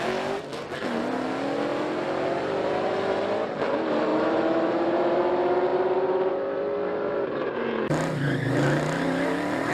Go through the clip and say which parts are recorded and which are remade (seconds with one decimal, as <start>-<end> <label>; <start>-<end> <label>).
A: 0.0-1.7 recorded; 1.7-3.2 remade; 3.2-4.1 recorded; 4.1-5.2 remade; 5.2-5.7 recorded; 5.7-9.7 remade